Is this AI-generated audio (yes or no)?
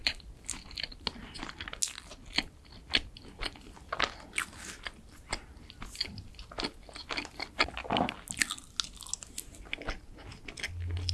no